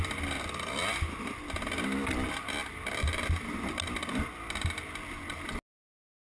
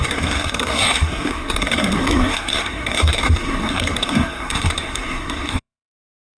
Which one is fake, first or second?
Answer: second